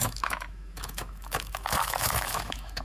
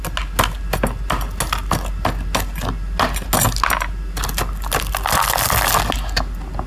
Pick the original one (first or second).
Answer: second